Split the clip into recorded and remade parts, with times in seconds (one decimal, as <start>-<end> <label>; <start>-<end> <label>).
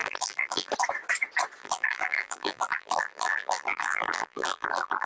0.0-0.7 remade; 0.7-1.6 recorded; 1.6-5.1 remade